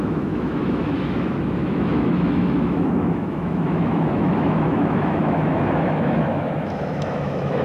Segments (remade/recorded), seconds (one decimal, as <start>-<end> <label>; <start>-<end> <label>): 0.0-7.6 remade